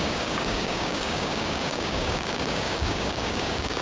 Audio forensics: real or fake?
fake